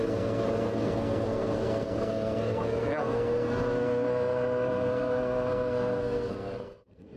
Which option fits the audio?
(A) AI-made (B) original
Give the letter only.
A